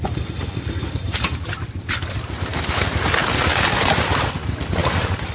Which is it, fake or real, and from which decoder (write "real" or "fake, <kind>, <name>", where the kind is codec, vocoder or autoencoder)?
real